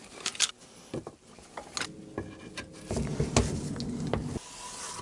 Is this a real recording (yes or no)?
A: yes